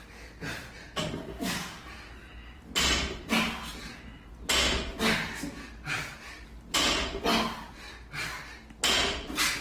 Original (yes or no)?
yes